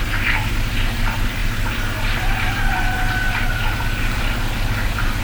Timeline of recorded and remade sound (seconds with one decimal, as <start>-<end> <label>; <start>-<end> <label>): 0.0-5.2 recorded